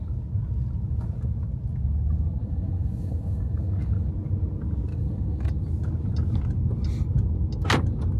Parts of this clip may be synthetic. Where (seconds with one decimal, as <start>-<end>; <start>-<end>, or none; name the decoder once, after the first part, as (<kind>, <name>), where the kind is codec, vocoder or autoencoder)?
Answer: 2.4-4.1 (codec, DAC); 4.9-5.5

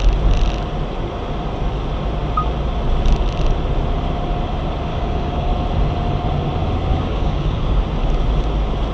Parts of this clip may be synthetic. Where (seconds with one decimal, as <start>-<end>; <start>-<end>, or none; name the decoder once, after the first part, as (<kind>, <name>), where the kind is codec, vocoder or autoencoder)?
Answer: 4.9-5.5 (codec, DAC); 6.9-7.8

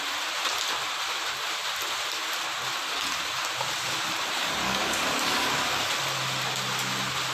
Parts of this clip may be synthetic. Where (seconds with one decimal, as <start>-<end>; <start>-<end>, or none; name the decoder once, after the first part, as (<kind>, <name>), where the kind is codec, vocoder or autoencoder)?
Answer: 4.4-5.9 (codec, DAC)